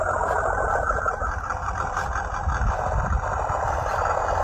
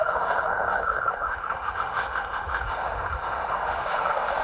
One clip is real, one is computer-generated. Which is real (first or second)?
first